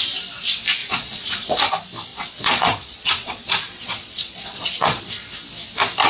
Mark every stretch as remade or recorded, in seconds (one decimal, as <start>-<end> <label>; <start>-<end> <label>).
0.0-0.8 recorded; 0.8-1.6 remade; 1.6-2.1 recorded; 2.1-5.0 remade; 5.0-6.1 recorded